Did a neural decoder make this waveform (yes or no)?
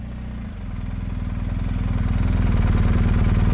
no